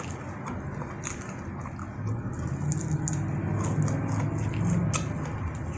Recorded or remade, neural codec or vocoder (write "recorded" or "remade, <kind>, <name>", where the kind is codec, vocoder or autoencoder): recorded